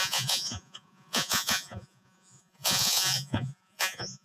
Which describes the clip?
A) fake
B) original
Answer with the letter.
A